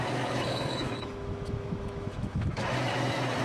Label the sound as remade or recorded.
remade